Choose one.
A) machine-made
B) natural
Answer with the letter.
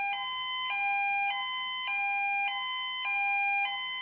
B